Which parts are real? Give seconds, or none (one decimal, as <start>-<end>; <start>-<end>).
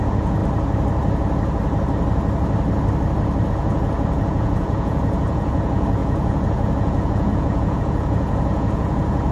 0.4-3.5